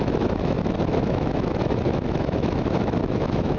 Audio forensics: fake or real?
fake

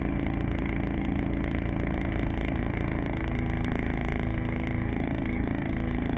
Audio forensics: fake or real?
fake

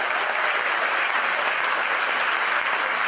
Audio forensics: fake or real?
real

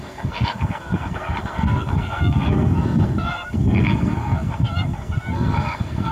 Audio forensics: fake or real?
fake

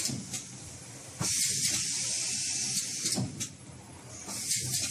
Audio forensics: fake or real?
real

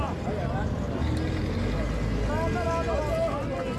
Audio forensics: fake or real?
real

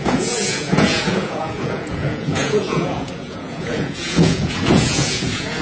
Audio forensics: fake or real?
fake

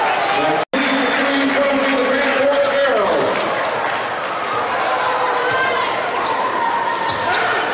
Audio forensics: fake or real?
real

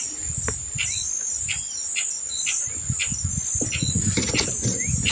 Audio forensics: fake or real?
real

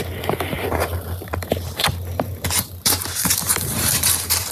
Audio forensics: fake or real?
fake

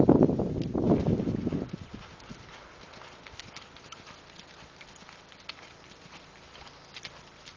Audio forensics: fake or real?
real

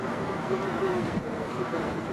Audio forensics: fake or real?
fake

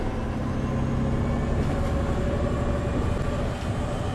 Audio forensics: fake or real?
real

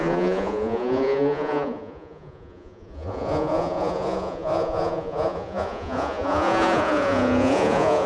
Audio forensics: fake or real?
fake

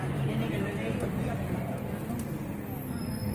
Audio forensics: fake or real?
real